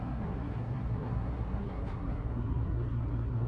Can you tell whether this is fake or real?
fake